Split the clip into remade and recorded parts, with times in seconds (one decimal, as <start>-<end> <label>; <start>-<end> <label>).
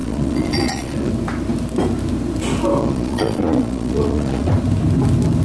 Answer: 0.0-1.1 remade; 1.1-2.8 recorded; 2.8-4.5 remade; 4.5-5.4 recorded